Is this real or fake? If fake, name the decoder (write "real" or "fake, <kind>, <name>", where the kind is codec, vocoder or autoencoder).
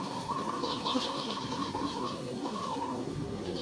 fake, codec, SNAC